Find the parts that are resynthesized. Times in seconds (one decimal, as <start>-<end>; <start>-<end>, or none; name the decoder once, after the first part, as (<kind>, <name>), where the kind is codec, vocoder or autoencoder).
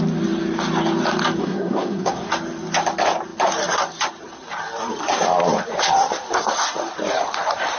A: 1.4-2.3 (codec, SNAC)